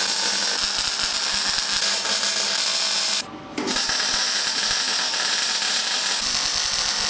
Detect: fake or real real